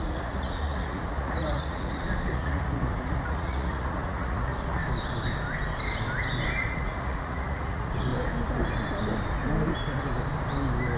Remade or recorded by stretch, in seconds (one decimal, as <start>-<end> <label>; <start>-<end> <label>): 0.0-4.8 remade; 4.8-6.6 recorded; 6.6-8.1 remade; 8.1-11.0 recorded